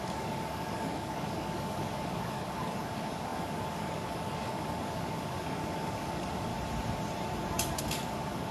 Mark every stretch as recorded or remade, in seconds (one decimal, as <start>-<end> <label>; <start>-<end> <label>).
0.0-6.5 remade; 6.5-7.8 recorded; 7.8-8.5 remade

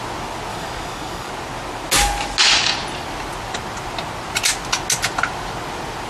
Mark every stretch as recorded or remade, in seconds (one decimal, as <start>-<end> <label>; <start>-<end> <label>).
0.0-0.5 recorded; 0.5-1.3 remade; 1.3-6.1 recorded

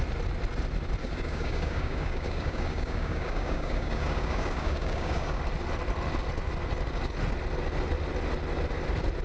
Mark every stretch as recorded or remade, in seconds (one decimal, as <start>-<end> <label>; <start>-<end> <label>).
0.0-1.0 recorded; 1.0-5.4 remade; 5.4-9.2 recorded